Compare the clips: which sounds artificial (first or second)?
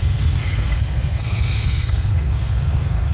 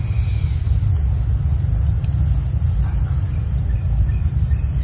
first